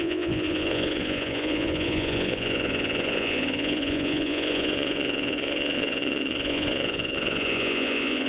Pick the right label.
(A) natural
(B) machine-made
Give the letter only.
B